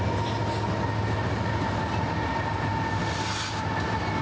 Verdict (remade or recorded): recorded